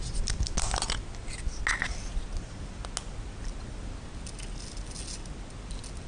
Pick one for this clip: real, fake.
real